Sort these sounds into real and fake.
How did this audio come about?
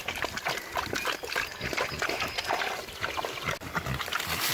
real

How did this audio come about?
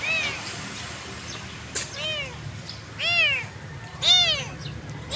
real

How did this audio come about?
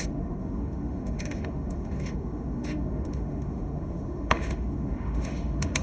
fake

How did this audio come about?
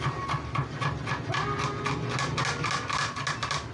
real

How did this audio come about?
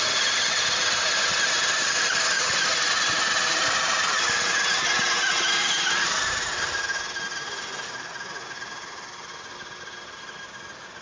real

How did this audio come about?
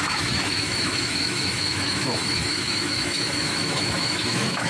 fake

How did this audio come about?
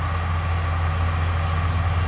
real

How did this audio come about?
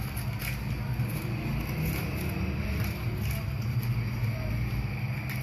real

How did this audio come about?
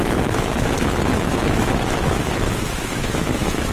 fake